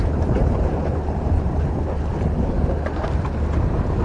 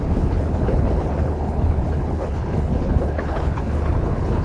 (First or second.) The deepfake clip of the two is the second